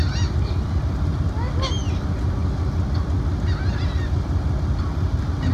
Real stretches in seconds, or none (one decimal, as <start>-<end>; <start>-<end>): 0.0-5.5